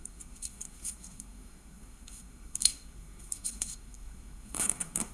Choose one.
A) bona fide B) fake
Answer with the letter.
B